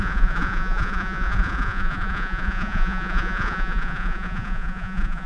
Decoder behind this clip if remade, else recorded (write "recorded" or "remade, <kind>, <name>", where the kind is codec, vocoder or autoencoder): remade, vocoder, Vocos